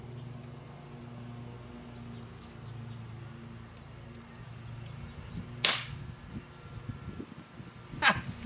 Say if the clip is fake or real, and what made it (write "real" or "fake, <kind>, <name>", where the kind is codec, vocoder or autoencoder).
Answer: real